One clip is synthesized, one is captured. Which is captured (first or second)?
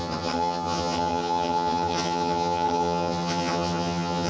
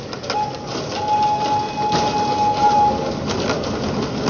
second